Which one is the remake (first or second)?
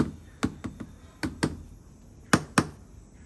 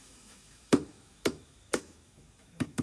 second